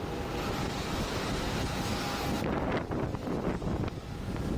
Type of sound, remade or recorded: recorded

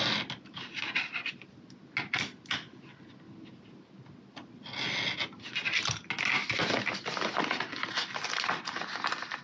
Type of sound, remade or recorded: recorded